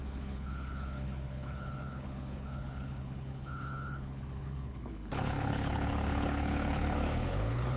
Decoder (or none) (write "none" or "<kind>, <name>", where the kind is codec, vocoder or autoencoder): codec, HILCodec